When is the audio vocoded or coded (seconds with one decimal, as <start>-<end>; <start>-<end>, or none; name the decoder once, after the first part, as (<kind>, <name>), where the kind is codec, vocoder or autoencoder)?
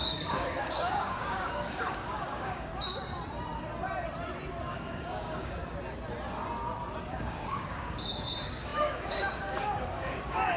0.0-2.7 (codec, DAC); 4.7-5.6; 7.1-10.6